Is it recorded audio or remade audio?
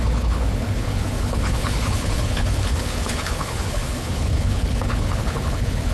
remade